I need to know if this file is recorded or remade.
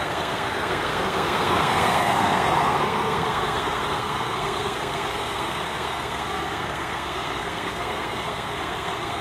remade